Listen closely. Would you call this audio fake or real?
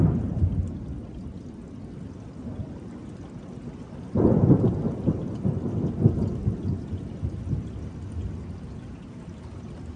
real